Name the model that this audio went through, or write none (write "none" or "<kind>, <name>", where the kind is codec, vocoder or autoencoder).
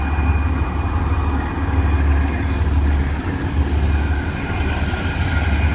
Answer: none